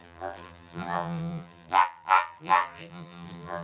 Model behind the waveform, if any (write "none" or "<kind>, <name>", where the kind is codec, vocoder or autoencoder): vocoder, BigVGAN v2